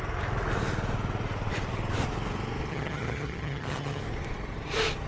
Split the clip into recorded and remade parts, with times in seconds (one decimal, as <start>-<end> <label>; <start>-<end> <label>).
0.0-2.7 recorded; 2.7-4.0 remade; 4.0-5.1 recorded